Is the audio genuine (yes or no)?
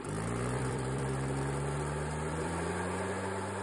no